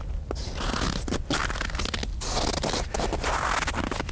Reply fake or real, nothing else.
real